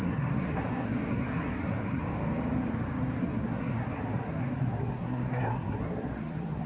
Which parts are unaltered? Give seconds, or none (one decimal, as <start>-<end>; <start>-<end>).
2.0-3.2